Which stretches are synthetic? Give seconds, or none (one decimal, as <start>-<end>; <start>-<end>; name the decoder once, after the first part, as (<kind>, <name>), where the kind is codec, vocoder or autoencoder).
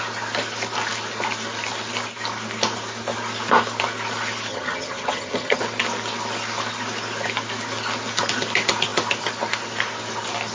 4.5-5.6 (vocoder, HiFi-GAN)